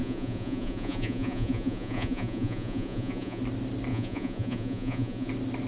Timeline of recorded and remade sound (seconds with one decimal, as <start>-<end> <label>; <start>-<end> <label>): 0.0-3.4 remade; 3.4-3.9 recorded; 3.9-5.3 remade; 5.3-5.7 recorded